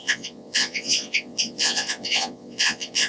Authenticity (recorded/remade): remade